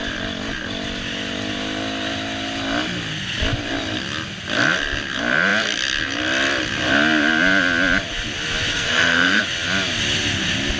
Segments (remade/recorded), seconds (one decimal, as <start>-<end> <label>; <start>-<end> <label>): 0.0-8.7 recorded; 8.7-9.4 remade; 9.4-10.8 recorded